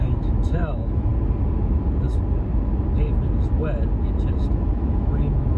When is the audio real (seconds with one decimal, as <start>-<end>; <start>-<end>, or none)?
1.1-4.5